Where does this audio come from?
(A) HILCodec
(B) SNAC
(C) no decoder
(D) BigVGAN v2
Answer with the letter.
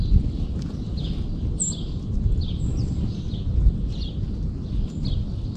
C